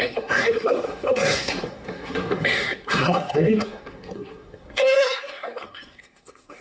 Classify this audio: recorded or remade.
remade